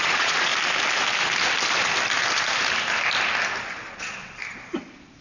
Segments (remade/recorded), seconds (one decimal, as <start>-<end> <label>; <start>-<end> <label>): 0.0-0.5 remade; 0.5-3.6 recorded; 3.6-4.4 remade; 4.4-5.2 recorded